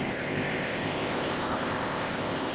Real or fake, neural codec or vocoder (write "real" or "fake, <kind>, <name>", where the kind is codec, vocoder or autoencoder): fake, codec, ZipCodec